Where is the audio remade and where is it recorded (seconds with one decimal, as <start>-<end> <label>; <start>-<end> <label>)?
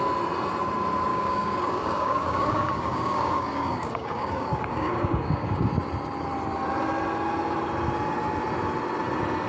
0.0-1.1 recorded; 1.1-5.7 remade; 5.7-9.5 recorded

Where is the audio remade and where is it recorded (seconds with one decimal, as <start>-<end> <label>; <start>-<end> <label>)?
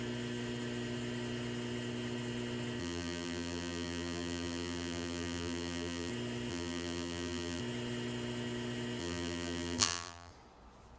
0.0-2.8 recorded; 2.8-6.1 remade; 6.1-6.5 recorded; 6.5-7.6 remade; 7.6-9.0 recorded; 9.0-10.3 remade; 10.3-11.0 recorded